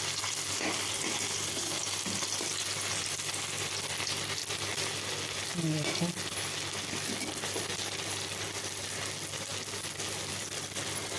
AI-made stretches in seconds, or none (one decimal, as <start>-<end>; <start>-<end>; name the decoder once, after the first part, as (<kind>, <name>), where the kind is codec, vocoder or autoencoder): none